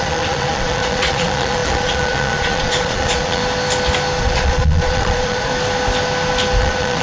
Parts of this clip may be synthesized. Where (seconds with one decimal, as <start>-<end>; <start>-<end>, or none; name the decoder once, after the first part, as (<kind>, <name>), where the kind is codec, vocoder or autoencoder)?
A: 0.0-3.4 (vocoder, Vocos); 4.2-5.5; 6.6-7.0